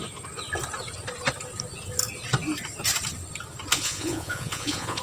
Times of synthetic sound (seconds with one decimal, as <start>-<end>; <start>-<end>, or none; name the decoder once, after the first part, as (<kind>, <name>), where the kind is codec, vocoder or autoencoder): 3.7-5.0 (vocoder, Vocos)